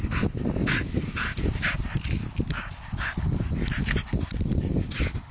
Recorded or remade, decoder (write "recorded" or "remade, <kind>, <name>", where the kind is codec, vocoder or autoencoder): remade, vocoder, BigVGAN v2